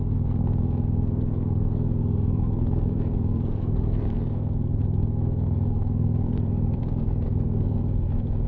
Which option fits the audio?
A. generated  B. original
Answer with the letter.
A